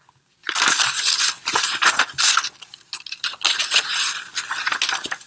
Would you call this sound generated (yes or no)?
no